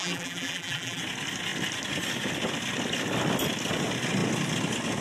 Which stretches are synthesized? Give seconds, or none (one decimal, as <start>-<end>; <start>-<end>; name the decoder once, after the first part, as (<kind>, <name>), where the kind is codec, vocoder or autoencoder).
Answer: 0.0-1.0 (vocoder, BigVGAN v2)